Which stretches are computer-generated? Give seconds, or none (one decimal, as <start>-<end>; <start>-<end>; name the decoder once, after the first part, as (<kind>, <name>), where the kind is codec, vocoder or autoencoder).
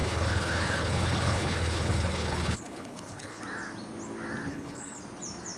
0.0-3.4 (codec, HILCodec); 4.5-5.0